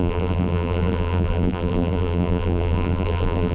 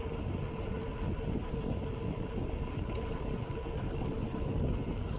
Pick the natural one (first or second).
second